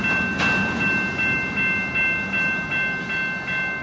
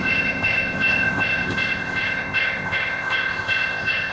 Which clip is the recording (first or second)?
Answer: first